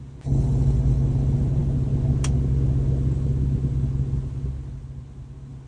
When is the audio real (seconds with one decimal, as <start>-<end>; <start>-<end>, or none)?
0.0-5.7